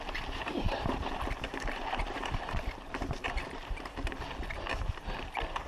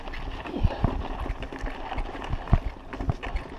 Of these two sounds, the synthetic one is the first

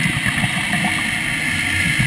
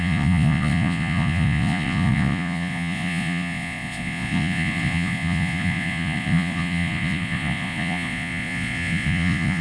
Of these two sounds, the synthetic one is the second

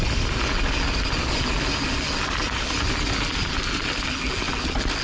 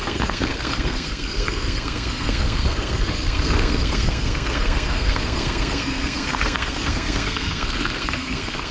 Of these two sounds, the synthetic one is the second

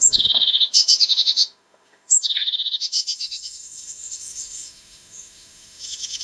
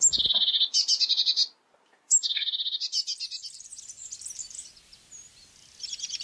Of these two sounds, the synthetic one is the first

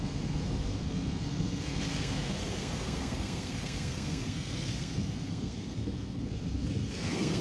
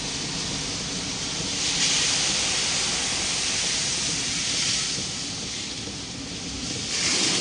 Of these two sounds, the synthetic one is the first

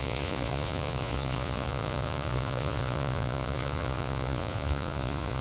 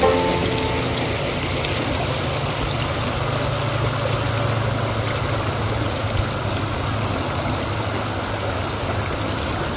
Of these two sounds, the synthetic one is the first